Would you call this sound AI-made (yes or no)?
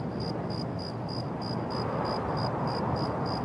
no